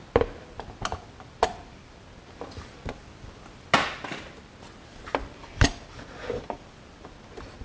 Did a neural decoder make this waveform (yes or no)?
no